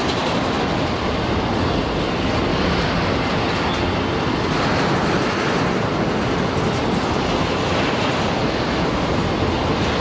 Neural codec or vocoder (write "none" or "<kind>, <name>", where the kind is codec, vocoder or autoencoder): none